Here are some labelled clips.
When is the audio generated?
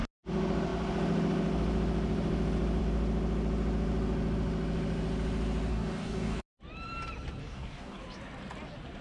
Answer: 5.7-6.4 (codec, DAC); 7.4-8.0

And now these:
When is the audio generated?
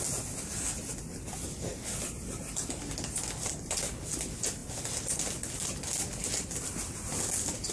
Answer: none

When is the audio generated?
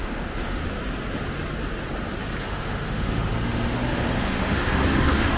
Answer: 0.0-0.6 (autoencoder, DAC-VAE); 2.4-5.4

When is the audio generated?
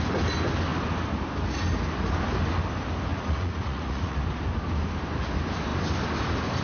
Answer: 3.1-4.2 (vocoder, Vocos)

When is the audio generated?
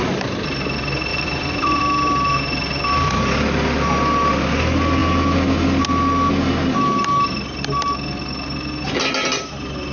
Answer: 1.1-1.8 (vocoder, Vocos)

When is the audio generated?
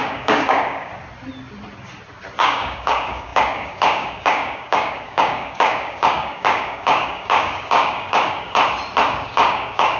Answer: 0.0-0.9 (codec, DAC); 2.4-8.6; 9.1-10.0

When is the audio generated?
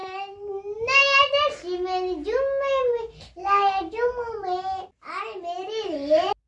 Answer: none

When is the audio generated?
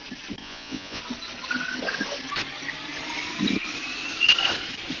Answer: 0.4-1.0 (vocoder, Vocos)